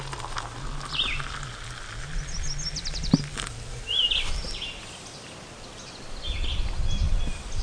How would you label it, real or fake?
real